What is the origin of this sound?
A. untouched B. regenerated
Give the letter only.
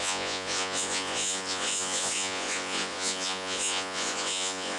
B